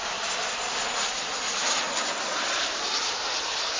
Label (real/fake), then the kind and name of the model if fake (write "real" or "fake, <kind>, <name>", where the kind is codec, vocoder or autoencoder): real